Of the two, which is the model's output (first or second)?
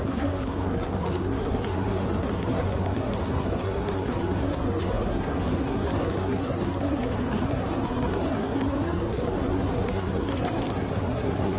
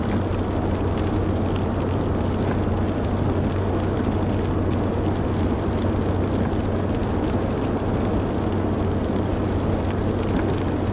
first